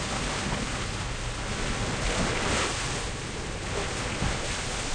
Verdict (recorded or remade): recorded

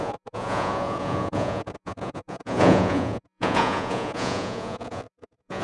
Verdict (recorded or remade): remade